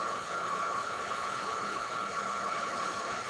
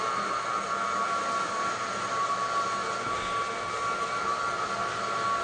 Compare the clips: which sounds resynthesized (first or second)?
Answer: first